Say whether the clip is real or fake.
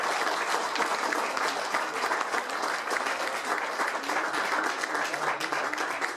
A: real